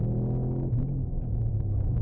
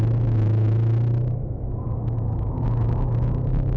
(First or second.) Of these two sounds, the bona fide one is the first